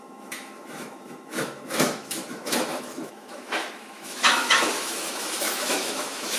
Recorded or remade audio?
remade